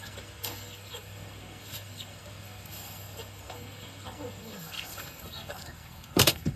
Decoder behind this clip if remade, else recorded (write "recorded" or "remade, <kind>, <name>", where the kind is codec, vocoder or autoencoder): remade, codec, SNAC